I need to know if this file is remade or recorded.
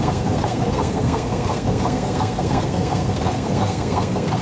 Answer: remade